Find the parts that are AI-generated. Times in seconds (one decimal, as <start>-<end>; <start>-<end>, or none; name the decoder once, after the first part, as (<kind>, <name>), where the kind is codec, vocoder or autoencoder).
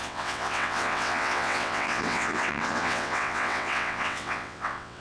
0.0-5.0 (vocoder, WaveNeXt)